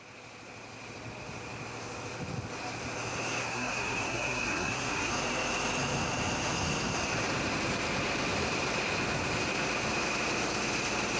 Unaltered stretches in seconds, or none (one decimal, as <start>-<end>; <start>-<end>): 0.0-3.4; 5.1-11.2